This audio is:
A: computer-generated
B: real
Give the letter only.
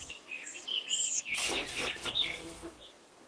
A